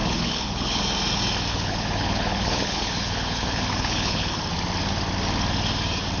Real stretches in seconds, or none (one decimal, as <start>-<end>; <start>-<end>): 0.8-1.5; 4.4-6.2

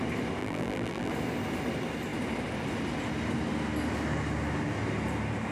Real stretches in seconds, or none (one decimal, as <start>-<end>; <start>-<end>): 0.0-0.4; 1.1-5.5